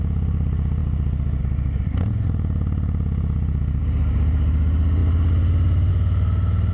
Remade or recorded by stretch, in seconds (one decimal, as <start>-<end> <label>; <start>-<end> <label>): 0.0-6.7 recorded